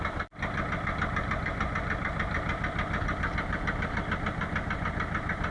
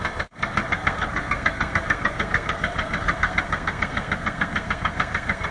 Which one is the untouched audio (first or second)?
first